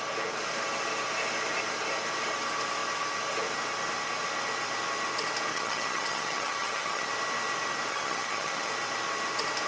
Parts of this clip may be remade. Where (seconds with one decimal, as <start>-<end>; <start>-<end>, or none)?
5.5-7.1; 7.9-8.7